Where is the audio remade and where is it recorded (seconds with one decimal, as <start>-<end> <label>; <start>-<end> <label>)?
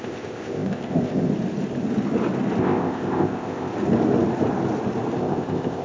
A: 0.0-1.3 remade; 1.3-2.6 recorded; 2.6-3.7 remade; 3.7-5.2 recorded; 5.2-5.8 remade